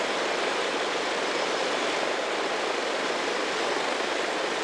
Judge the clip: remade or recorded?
recorded